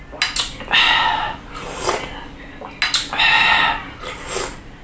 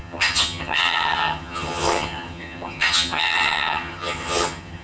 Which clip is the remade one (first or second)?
second